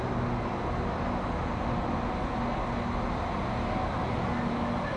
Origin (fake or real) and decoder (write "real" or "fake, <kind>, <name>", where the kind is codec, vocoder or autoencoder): real